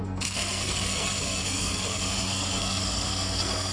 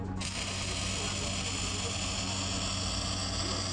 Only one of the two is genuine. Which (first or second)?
second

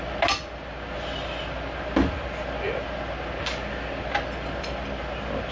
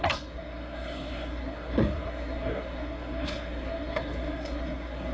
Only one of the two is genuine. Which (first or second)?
first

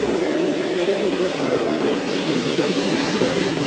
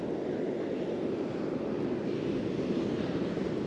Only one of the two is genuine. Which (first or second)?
second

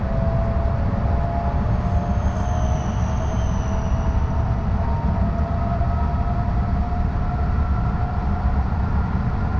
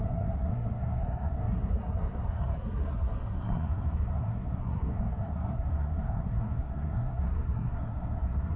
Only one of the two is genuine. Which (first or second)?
first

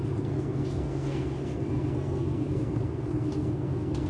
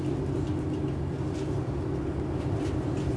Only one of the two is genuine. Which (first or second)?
second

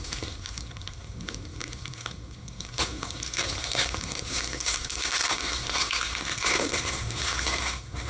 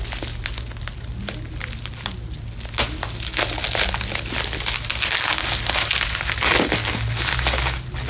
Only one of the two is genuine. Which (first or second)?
second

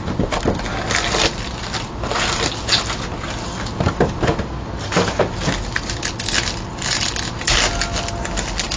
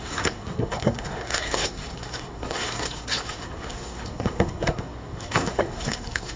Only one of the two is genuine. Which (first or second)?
first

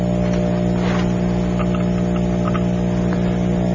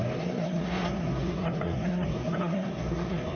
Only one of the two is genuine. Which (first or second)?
first